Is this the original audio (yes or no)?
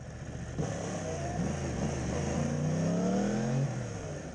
yes